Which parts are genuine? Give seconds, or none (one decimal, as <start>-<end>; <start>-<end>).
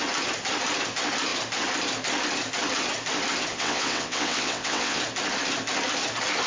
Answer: 0.0-3.5; 5.0-6.5